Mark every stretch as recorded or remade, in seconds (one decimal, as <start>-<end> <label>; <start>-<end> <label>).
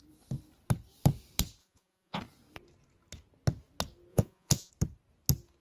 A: 0.0-1.6 recorded; 1.6-2.2 remade; 2.2-4.1 recorded; 4.1-4.7 remade; 4.7-5.6 recorded